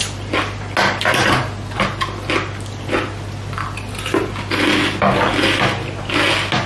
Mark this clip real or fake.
real